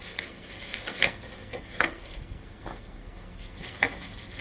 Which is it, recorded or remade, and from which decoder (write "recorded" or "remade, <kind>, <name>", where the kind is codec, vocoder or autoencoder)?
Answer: remade, codec, SNAC